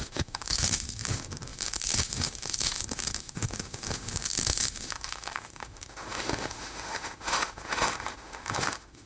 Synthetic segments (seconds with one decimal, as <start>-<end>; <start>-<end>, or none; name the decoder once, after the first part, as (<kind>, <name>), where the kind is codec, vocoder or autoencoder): 0.0-9.1 (autoencoder, DAC-VAE)